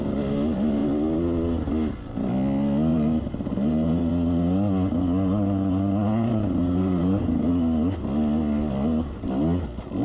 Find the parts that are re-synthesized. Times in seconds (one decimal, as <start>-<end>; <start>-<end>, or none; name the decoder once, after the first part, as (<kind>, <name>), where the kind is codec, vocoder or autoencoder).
2.9-4.1 (vocoder, BigVGAN v2); 6.3-7.5